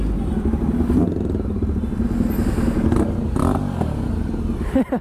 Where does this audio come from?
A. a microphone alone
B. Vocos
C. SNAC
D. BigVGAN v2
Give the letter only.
A